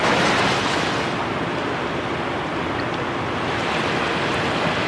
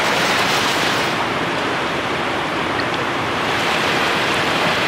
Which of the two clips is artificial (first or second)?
second